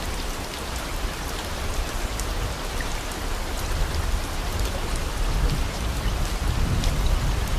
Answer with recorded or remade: recorded